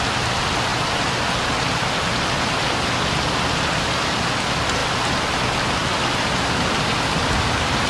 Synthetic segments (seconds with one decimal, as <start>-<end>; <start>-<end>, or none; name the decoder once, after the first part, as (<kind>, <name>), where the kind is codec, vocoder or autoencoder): 0.0-0.7 (vocoder, BigVGAN v2); 3.1-4.8; 6.8-7.9